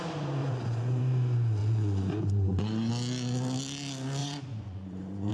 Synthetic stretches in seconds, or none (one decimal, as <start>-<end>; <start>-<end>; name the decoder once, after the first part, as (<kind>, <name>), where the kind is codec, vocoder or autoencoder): 0.4-1.0 (vocoder, Vocos); 1.6-2.9; 4.2-5.3